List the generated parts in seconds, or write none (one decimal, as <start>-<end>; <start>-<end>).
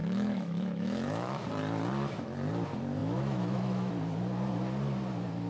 0.0-1.5; 3.0-3.9